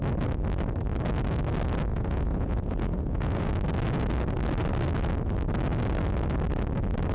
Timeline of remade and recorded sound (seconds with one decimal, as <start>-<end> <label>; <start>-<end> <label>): 0.0-1.9 recorded; 1.9-3.5 remade; 3.5-7.1 recorded